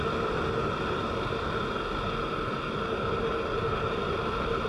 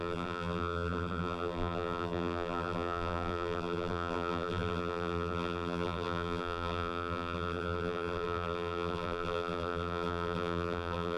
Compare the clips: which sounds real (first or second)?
first